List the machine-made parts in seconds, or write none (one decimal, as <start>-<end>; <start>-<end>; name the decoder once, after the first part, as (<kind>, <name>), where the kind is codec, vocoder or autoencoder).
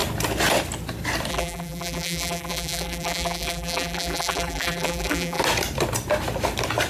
1.3-5.4 (vocoder, BigVGAN v2)